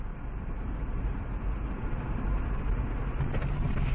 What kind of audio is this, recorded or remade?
recorded